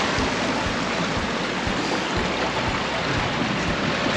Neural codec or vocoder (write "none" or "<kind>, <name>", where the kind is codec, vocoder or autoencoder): none